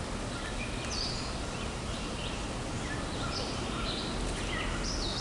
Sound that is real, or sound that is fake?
real